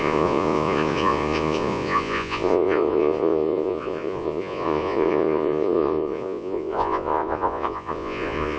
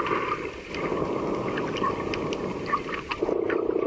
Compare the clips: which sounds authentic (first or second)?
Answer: second